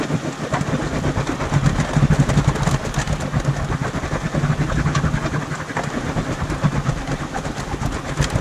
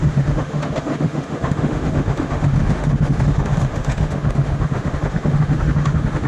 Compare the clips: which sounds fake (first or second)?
second